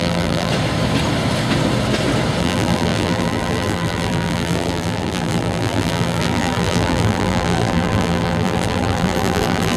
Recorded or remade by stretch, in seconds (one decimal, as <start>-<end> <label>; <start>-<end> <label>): 0.0-0.5 remade; 0.5-2.4 recorded; 2.4-9.8 remade